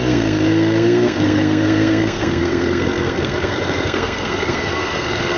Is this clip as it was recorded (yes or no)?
no